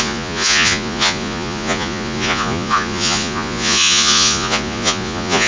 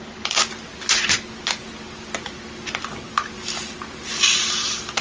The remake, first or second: first